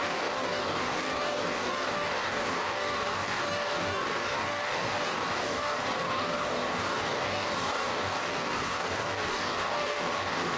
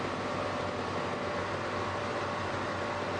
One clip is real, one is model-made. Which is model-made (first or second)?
first